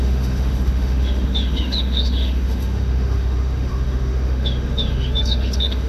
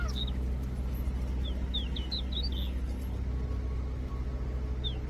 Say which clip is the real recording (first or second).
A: second